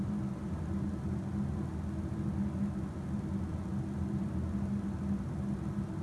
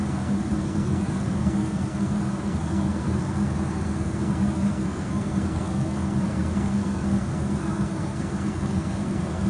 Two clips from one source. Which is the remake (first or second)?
second